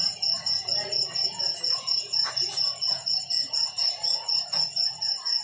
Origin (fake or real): fake